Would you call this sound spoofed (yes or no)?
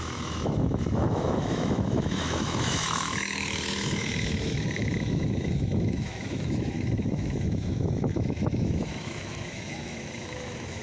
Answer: yes